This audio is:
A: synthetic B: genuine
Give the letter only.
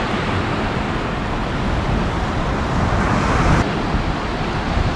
B